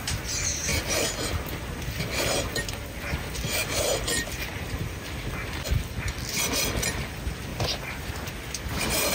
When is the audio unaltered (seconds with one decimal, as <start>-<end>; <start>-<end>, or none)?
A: 0.0-7.5; 8.1-9.1